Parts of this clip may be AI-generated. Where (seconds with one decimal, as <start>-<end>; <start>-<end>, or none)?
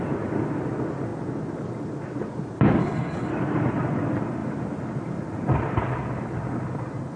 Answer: 2.8-3.3